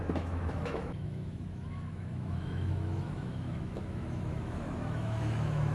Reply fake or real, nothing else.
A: fake